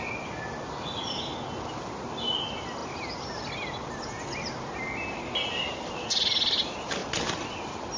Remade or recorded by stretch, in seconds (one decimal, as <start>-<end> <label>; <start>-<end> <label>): 0.0-8.0 recorded